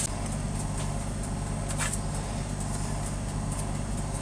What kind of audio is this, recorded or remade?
recorded